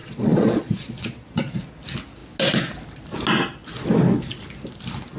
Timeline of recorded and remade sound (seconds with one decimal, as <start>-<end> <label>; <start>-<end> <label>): 0.0-1.6 remade; 1.6-5.2 recorded